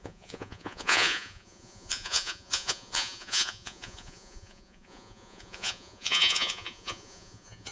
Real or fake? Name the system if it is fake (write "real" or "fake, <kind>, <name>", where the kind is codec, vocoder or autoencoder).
fake, vocoder, Vocos